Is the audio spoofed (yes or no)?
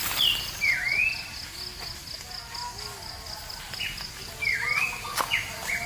no